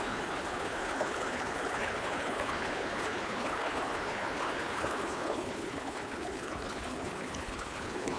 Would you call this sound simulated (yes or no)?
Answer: yes